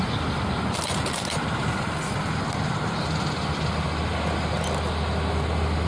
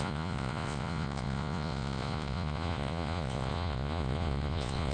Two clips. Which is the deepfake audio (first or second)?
second